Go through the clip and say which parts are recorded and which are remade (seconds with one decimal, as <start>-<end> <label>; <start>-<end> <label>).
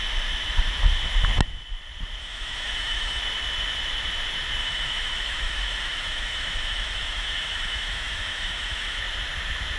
0.0-2.2 recorded; 2.2-3.2 remade; 3.2-4.6 recorded; 4.6-9.0 remade; 9.0-9.8 recorded